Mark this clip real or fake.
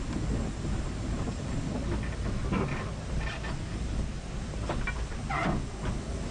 real